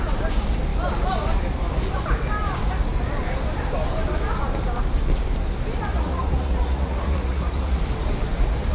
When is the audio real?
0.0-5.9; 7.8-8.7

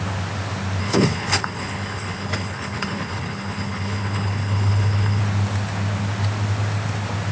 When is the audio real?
0.0-0.8; 5.2-7.3

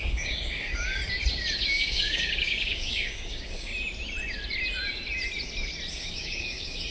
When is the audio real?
1.0-1.6; 3.7-5.9